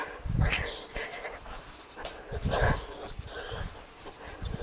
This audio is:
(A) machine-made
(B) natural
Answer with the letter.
B